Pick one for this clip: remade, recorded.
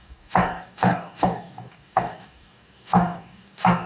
remade